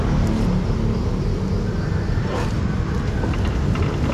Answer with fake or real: real